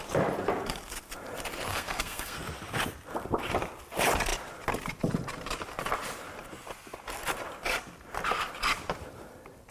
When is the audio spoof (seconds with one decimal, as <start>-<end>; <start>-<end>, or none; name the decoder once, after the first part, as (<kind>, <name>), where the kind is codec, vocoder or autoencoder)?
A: 1.7-2.4 (codec, SNAC)